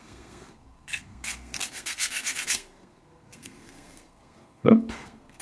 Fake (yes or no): yes